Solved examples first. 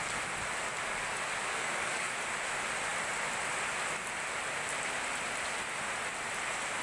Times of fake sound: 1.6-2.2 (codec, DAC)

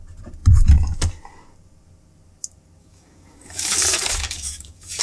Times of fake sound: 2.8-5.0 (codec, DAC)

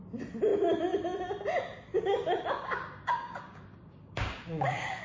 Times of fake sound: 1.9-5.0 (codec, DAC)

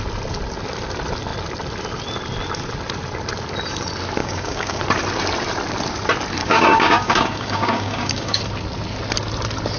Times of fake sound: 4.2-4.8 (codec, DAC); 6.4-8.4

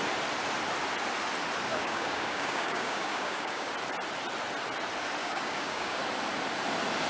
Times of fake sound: 1.7-3.7 (codec, DAC); 5.2-6.0